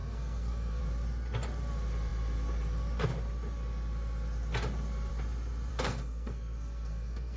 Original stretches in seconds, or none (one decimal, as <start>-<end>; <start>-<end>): 0.8-5.7